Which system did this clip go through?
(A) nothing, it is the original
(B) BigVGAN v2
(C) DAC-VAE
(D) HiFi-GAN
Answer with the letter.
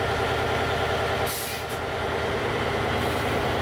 A